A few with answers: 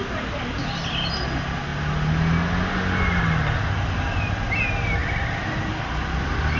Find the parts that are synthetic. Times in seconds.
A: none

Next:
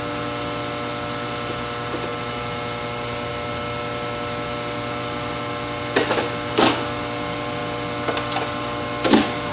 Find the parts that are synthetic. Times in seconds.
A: none

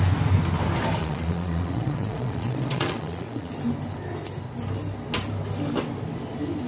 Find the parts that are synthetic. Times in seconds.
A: 1.0-3.5 (vocoder, Vocos)

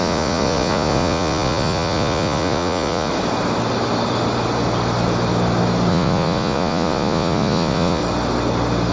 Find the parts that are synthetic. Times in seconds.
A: 0.0-3.1 (vocoder, Vocos); 5.9-8.0

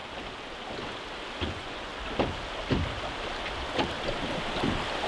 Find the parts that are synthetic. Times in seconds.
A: 1.5-1.9 (vocoder, Vocos)

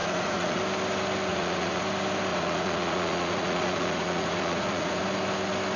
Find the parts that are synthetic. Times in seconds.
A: 0.0-0.6 (vocoder, Vocos); 1.3-1.8; 2.3-5.0